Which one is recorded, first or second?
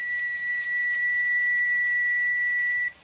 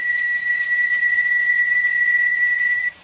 first